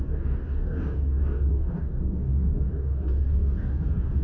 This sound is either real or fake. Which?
fake